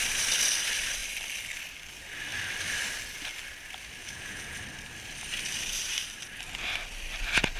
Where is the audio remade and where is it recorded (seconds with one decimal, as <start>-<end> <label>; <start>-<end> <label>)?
0.0-4.0 recorded; 4.0-4.6 remade; 4.6-7.6 recorded